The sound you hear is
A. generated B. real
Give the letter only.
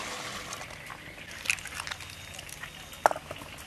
B